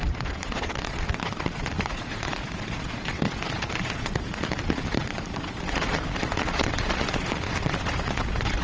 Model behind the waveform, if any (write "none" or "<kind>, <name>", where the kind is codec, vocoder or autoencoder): vocoder, Vocos